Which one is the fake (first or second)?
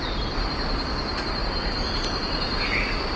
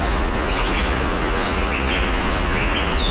second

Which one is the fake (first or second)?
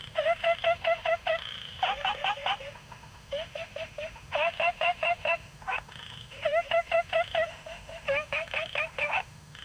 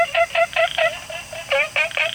first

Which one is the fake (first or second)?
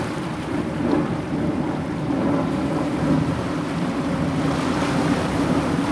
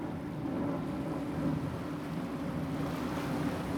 first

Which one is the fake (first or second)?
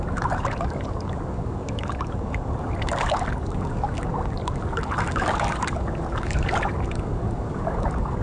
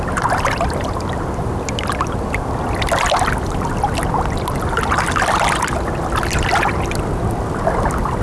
first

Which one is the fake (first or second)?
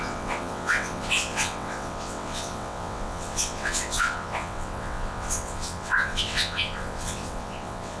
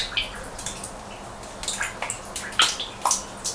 first